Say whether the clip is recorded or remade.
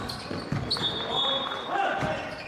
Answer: recorded